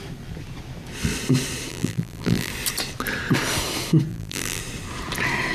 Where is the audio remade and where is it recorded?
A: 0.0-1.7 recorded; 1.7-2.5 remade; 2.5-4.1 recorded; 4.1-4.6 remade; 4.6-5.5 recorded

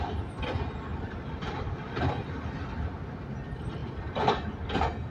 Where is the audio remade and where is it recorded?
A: 0.0-0.9 recorded; 0.9-2.1 remade; 2.1-5.1 recorded

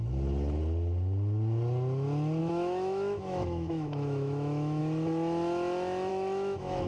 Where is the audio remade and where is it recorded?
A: 0.0-2.4 recorded; 2.4-4.8 remade; 4.8-6.1 recorded; 6.1-6.9 remade

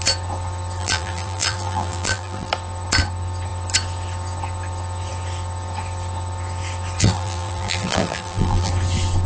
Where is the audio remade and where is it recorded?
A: 0.0-0.8 recorded; 0.8-2.5 remade; 2.5-7.0 recorded; 7.0-8.7 remade; 8.7-9.3 recorded

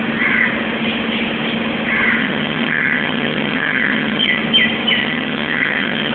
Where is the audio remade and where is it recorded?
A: 0.0-2.2 recorded; 2.2-4.4 remade; 4.4-5.0 recorded; 5.0-6.1 remade